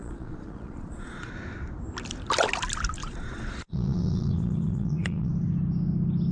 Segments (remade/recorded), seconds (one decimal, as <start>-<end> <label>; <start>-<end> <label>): 0.0-1.3 remade; 1.3-3.0 recorded; 3.0-5.3 remade; 5.3-6.3 recorded